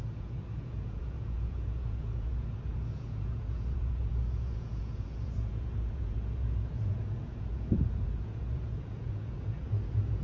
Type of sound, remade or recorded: remade